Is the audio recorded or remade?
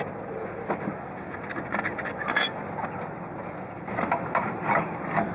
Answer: recorded